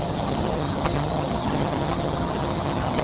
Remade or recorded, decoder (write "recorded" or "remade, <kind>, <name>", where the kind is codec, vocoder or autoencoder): remade, vocoder, HiFi-GAN